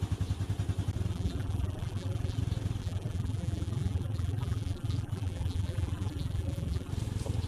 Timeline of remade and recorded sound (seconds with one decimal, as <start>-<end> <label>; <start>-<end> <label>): 0.0-1.1 recorded; 1.1-2.4 remade; 2.4-2.8 recorded; 2.8-6.9 remade; 6.9-7.5 recorded